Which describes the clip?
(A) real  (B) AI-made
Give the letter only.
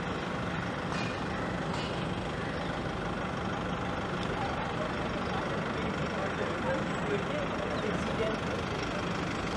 A